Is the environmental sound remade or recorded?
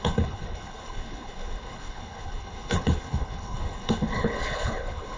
remade